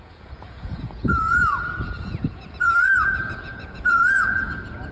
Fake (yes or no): yes